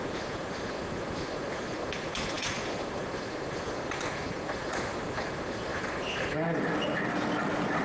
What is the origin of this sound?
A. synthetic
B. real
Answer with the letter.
B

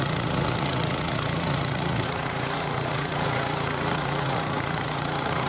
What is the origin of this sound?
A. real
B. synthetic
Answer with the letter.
B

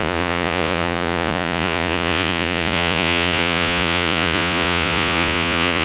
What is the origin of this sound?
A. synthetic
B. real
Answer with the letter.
A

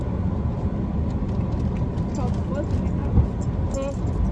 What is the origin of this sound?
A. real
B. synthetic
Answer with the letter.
A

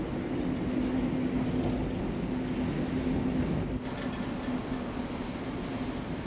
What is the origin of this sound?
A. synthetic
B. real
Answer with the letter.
B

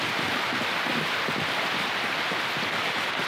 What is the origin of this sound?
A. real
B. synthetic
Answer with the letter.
A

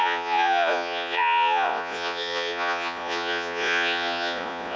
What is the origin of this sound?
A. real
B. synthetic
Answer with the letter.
B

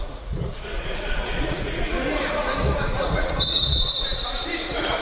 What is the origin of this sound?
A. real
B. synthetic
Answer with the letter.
B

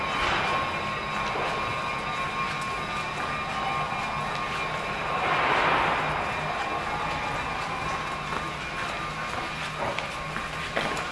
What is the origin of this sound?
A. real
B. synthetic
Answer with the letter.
A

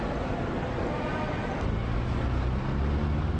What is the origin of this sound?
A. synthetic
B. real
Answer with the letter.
B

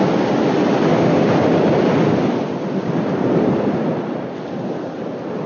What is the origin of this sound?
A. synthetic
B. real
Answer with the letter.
B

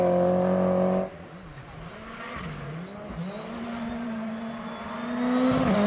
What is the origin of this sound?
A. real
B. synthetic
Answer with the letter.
A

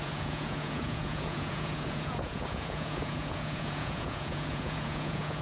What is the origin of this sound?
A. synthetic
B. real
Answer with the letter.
A